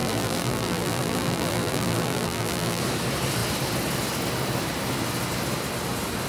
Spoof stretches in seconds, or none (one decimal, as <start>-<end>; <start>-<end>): 0.0-2.8